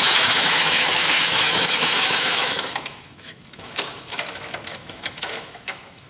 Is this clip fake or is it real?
fake